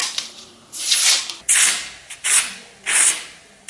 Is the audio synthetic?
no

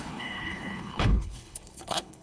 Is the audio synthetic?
yes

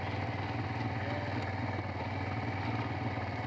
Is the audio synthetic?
no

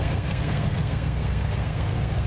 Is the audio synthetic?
yes